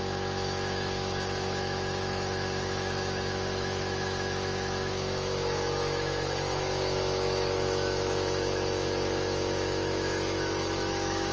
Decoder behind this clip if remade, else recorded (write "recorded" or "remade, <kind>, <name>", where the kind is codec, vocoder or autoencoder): remade, autoencoder, DAC-VAE